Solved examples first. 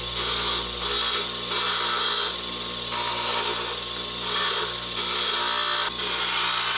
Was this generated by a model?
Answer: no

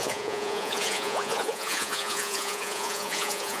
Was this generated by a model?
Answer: yes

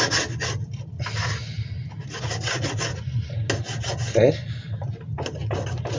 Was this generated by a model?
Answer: no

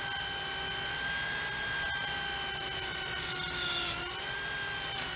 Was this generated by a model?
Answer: no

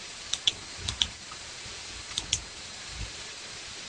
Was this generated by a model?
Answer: yes